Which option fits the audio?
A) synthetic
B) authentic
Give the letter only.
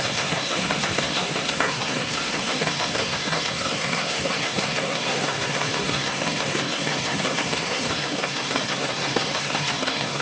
A